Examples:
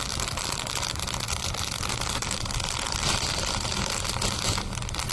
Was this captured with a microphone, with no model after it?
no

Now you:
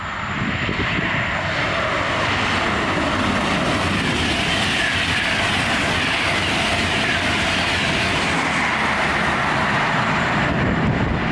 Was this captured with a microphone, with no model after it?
yes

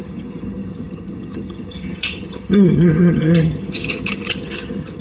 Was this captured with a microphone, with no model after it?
no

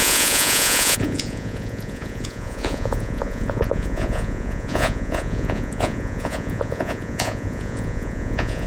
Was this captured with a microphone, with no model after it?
no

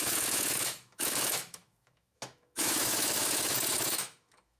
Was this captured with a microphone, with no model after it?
no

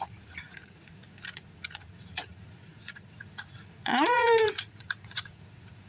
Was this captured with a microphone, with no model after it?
no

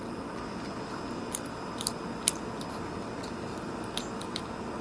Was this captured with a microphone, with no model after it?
yes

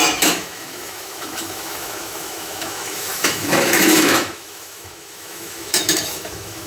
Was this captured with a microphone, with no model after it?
no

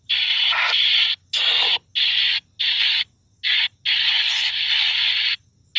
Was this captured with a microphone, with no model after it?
yes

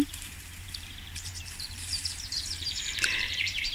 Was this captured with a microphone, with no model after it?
no